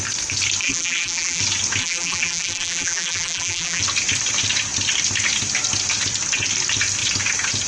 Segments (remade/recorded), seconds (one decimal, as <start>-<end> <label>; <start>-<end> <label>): 0.0-0.6 recorded; 0.6-1.4 remade; 1.4-1.8 recorded; 1.8-3.8 remade; 3.8-7.7 recorded